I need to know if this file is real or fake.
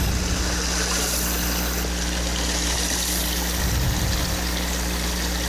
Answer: real